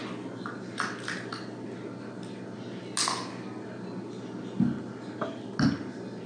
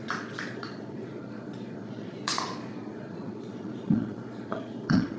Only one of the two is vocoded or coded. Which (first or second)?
second